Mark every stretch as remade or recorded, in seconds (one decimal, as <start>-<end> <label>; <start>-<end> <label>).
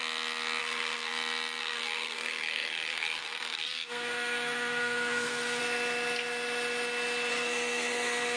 0.0-0.6 recorded; 0.6-1.1 remade; 1.1-1.6 recorded; 1.6-5.6 remade; 5.6-7.3 recorded; 7.3-8.4 remade